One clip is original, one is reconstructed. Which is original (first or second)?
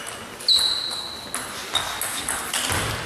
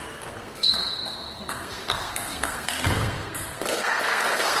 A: first